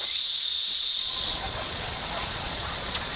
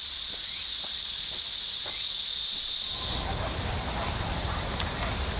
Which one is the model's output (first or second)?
first